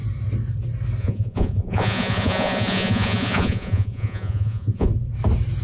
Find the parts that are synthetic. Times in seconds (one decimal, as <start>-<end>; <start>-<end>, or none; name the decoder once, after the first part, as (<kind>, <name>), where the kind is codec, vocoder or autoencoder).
1.0-4.9 (vocoder, Vocos)